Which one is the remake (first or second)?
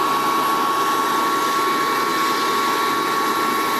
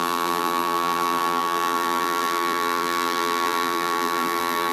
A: second